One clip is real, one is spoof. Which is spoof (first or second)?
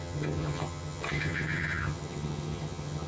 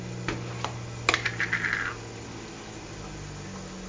first